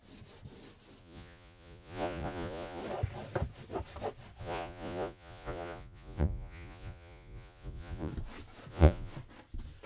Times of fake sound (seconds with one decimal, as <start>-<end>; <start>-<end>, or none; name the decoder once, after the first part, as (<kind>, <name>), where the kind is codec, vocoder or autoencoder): 1.0-2.8 (vocoder, Vocos); 4.4-8.1; 8.7-9.1